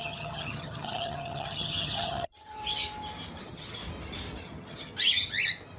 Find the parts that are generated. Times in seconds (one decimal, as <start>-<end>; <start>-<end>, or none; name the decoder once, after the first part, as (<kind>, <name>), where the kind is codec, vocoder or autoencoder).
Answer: 0.0-2.6 (vocoder, HiFi-GAN); 3.4-3.8; 4.4-4.9